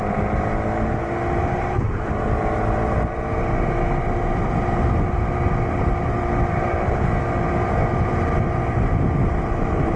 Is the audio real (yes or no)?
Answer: yes